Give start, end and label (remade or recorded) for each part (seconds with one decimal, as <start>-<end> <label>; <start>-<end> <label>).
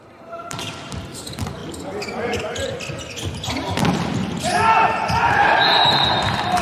0.0-1.6 remade; 1.6-5.6 recorded; 5.6-6.6 remade